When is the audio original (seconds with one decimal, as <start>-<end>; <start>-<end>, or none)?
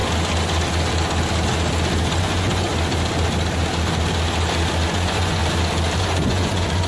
0.0-2.2; 2.7-4.9; 5.4-6.0